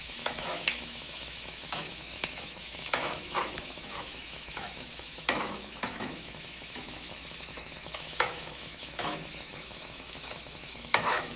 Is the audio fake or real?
fake